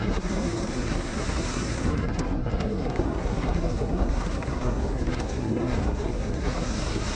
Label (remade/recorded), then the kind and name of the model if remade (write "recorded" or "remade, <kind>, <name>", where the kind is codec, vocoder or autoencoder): remade, codec, SNAC